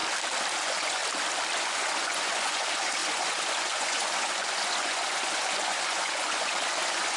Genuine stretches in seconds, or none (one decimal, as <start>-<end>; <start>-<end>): 0.0-0.6; 1.0-1.6